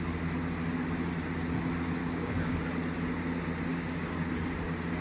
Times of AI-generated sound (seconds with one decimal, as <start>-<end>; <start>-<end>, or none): 2.0-2.6; 3.7-4.3